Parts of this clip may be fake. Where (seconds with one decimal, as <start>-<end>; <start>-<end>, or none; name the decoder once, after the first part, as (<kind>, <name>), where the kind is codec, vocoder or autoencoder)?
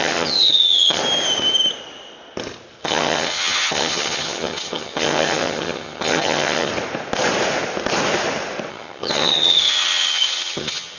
0.0-1.0 (vocoder, HiFi-GAN); 2.8-6.7; 8.7-11.0